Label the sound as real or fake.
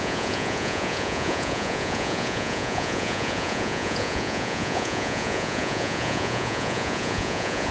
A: fake